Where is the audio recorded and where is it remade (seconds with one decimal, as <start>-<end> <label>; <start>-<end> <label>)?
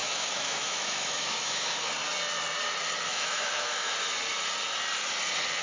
0.0-1.9 remade; 1.9-3.1 recorded; 3.1-3.9 remade; 3.9-5.6 recorded